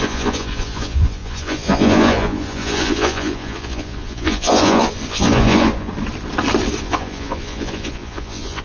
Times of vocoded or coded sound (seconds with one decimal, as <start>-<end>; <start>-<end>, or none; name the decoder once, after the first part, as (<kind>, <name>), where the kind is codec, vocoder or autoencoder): 0.0-5.9 (vocoder, Vocos); 6.8-8.6